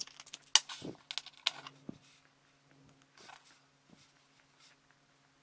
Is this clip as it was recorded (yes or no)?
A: yes